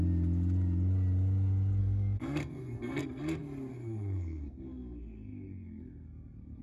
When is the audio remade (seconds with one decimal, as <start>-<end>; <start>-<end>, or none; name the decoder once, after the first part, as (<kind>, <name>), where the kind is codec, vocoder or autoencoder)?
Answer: 1.8-3.2 (codec, SNAC); 3.7-6.6